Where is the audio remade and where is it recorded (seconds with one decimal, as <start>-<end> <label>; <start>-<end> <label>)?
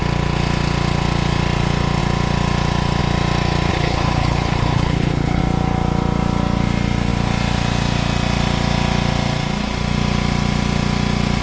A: 0.0-3.7 recorded; 3.7-5.4 remade; 5.4-11.4 recorded